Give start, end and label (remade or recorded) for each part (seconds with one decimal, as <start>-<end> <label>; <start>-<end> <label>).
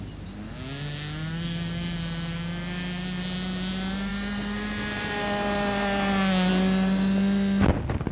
0.0-8.1 recorded